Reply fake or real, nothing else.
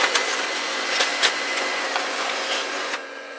fake